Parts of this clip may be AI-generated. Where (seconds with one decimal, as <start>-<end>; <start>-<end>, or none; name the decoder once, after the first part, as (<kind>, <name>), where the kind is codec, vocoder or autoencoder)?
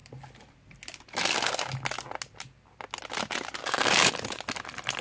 3.6-4.1 (codec, DAC)